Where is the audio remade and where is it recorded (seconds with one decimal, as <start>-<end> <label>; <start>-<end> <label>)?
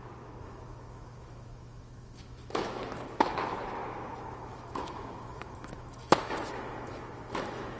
0.0-7.8 remade